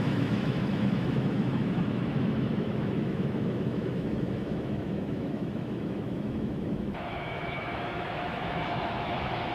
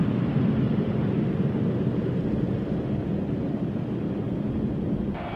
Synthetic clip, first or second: first